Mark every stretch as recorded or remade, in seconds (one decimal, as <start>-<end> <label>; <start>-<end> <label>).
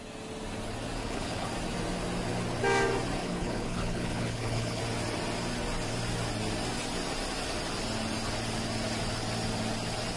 0.0-1.0 recorded; 1.0-1.5 remade; 1.5-3.2 recorded; 3.2-4.8 remade; 4.8-10.2 recorded